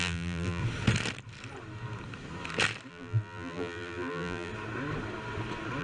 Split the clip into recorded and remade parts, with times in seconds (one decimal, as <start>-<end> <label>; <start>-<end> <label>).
0.0-0.6 remade; 0.6-2.9 recorded; 2.9-4.5 remade; 4.5-5.8 recorded